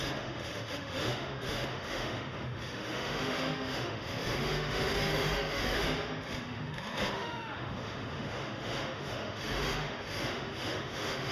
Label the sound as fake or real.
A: fake